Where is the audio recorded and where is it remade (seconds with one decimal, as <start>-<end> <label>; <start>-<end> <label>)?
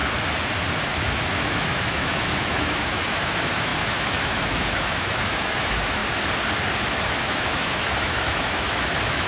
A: 0.0-0.8 recorded; 0.8-6.0 remade; 6.0-7.1 recorded; 7.1-9.3 remade